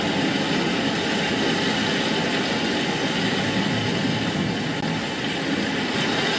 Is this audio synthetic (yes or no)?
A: no